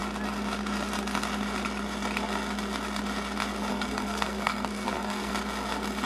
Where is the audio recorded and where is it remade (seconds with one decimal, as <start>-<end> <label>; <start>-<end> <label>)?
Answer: 0.0-3.7 recorded; 3.7-5.3 remade; 5.3-6.1 recorded